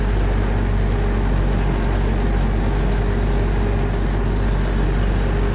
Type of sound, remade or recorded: recorded